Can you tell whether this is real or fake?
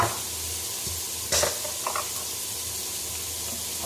real